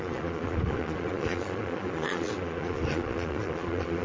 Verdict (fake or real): fake